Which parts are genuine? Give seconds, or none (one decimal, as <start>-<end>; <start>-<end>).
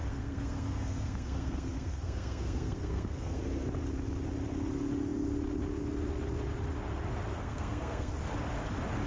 3.4-7.3; 8.1-9.1